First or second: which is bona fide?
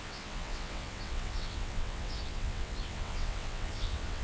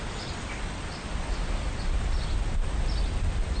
second